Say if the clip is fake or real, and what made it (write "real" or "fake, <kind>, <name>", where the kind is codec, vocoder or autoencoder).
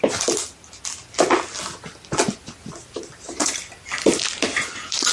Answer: real